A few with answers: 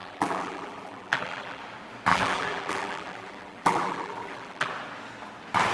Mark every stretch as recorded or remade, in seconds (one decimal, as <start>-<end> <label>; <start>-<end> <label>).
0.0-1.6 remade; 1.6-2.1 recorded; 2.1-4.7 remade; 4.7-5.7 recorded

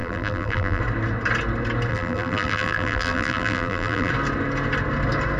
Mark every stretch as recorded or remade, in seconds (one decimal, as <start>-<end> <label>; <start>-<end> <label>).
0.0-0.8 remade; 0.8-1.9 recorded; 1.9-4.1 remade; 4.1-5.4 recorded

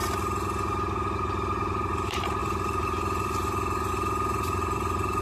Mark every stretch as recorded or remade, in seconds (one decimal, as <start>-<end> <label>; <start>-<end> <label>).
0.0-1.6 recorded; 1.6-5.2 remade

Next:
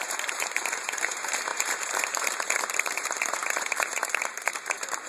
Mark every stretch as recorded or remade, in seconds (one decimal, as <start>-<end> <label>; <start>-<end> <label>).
0.0-5.1 remade

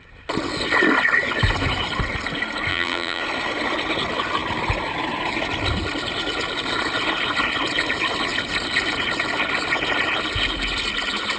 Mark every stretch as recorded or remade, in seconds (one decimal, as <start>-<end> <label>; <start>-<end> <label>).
0.0-2.7 recorded; 2.7-3.2 remade; 3.2-11.4 recorded